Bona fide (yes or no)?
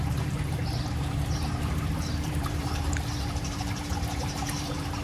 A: no